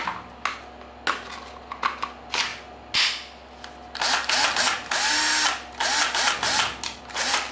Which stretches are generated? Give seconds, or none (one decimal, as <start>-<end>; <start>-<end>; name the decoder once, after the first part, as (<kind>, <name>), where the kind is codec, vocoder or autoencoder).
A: none